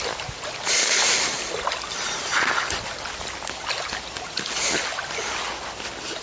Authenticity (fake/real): real